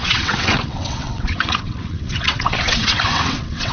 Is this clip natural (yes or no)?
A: no